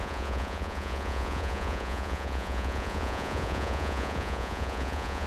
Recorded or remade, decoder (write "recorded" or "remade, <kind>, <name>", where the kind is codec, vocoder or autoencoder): remade, vocoder, Vocos